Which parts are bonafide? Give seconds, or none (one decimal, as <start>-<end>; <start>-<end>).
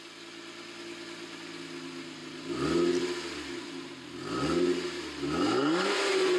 0.0-6.4